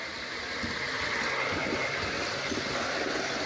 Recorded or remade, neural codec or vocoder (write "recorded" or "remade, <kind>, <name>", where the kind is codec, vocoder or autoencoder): recorded